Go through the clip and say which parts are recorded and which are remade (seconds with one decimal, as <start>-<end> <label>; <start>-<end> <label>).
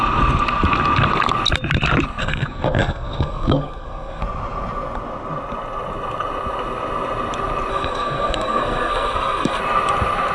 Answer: 0.0-2.2 recorded; 2.2-4.2 remade; 4.2-7.7 recorded; 7.7-9.6 remade; 9.6-10.3 recorded